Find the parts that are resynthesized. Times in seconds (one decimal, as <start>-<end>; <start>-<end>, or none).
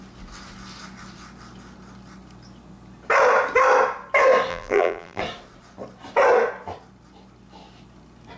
4.5-5.2